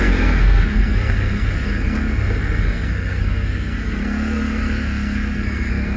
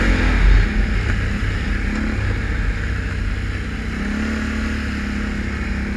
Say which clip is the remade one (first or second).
first